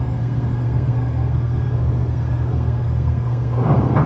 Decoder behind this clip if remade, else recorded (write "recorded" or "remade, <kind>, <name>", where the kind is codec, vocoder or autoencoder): remade, codec, SNAC